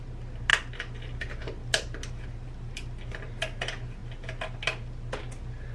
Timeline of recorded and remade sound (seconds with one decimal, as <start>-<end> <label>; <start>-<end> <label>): 0.0-5.7 recorded